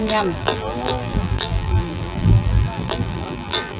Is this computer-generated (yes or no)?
yes